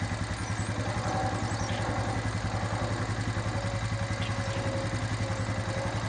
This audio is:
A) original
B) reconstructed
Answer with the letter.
A